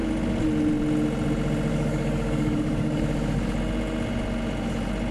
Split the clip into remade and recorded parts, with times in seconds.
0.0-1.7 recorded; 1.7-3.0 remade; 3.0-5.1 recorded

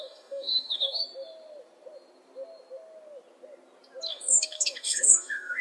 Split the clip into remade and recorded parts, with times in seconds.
0.0-1.0 remade; 1.0-4.1 recorded; 4.1-5.6 remade

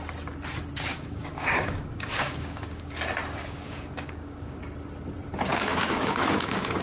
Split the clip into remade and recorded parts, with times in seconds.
0.0-0.9 recorded; 0.9-3.0 remade; 3.0-3.4 recorded; 3.4-4.6 remade; 4.6-5.5 recorded; 5.5-6.8 remade

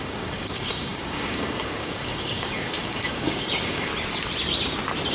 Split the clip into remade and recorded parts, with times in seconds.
0.0-3.9 remade; 3.9-5.1 recorded

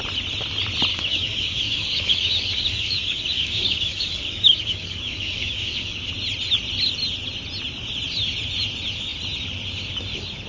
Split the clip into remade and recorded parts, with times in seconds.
0.0-0.9 recorded; 0.9-6.1 remade; 6.1-10.5 recorded

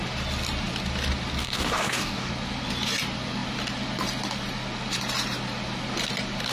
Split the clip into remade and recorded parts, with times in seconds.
0.0-1.4 recorded; 1.4-2.3 remade; 2.3-6.5 recorded

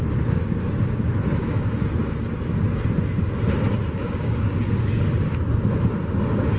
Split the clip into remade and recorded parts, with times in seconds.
0.0-1.4 recorded; 1.4-2.0 remade; 2.0-4.0 recorded; 4.0-5.0 remade; 5.0-6.6 recorded